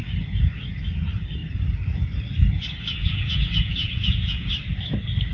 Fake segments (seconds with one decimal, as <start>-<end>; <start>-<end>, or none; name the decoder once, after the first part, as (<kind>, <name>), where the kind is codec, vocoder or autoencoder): 3.0-4.5 (vocoder, Vocos)